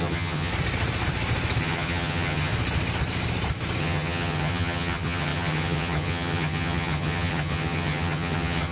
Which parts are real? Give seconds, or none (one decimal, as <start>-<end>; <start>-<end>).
0.5-1.6; 2.5-3.8